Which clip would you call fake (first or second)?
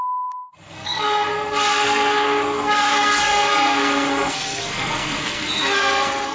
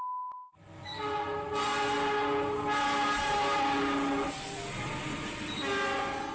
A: first